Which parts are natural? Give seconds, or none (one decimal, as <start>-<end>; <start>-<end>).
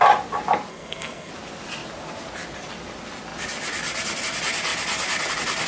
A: 0.0-0.7; 1.3-5.7